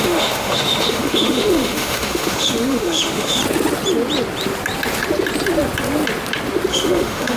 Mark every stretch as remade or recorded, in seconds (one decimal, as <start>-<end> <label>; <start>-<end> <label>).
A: 0.0-3.4 remade; 3.4-6.7 recorded; 6.7-7.4 remade